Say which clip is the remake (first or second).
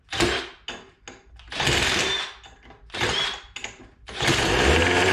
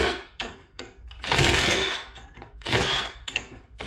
second